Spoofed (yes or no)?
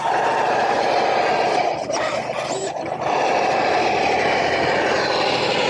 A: no